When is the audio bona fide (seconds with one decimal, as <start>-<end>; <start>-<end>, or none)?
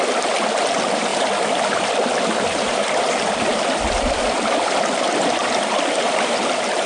0.0-6.9